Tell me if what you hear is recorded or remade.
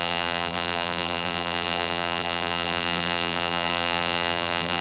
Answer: remade